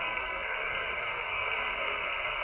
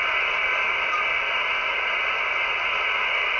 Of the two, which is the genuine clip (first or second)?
second